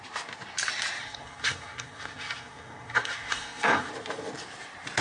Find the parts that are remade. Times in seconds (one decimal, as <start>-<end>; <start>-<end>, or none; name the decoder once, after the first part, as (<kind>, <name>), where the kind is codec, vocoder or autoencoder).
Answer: 1.0-3.9 (codec, SNAC)